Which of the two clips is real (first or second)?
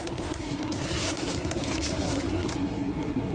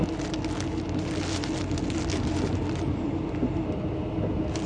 second